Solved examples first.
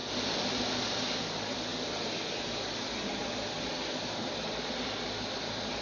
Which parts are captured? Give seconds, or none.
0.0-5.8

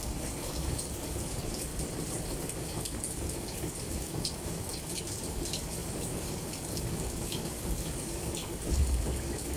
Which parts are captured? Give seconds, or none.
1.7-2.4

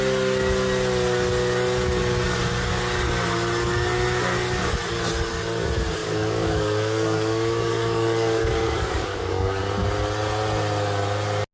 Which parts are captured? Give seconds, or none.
0.0-6.0; 9.6-11.5

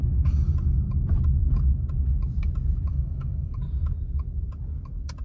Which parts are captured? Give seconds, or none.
0.0-2.9; 3.6-5.2

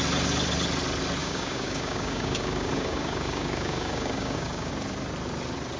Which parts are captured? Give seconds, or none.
0.0-1.2; 4.7-5.8

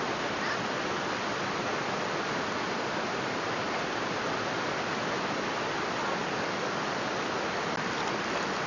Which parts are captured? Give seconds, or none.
0.0-6.2; 6.9-8.7